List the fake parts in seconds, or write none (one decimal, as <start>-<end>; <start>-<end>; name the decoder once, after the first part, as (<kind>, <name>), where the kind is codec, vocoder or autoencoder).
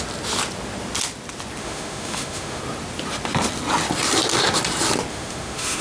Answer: 1.6-2.6 (autoencoder, DAC-VAE); 5.1-5.8